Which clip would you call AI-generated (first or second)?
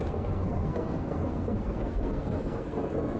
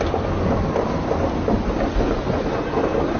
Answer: first